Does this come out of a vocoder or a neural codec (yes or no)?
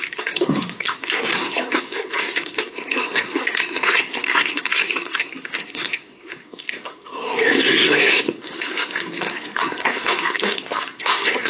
yes